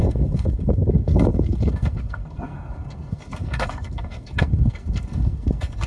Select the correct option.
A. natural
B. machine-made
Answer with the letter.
B